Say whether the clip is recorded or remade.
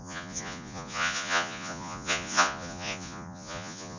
remade